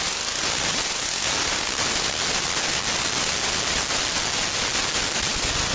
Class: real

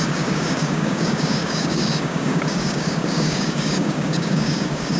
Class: fake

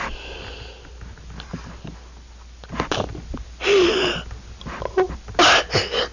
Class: real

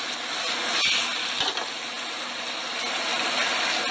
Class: real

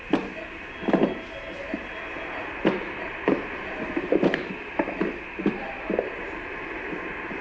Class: real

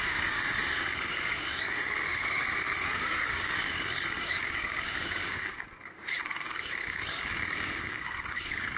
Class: fake